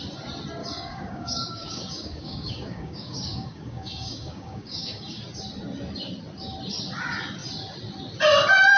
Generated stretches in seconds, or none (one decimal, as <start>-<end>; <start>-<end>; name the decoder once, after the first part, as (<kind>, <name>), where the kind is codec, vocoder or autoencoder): 0.6-5.2 (codec, DAC)